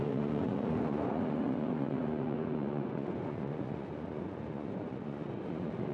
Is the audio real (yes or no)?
no